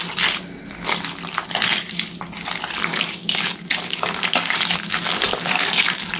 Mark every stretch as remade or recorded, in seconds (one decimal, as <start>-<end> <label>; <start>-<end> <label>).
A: 0.0-2.9 recorded; 2.9-6.2 remade